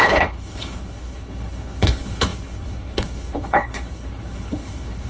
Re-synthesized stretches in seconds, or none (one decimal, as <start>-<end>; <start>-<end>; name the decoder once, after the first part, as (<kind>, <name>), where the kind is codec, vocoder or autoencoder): 0.0-5.1 (codec, HILCodec)